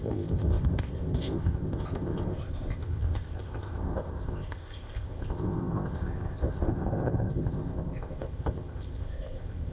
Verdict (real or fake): fake